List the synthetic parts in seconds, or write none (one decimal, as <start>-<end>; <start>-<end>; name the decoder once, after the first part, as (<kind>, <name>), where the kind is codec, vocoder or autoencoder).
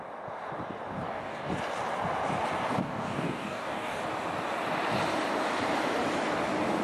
1.0-1.5 (codec, DAC); 2.7-4.0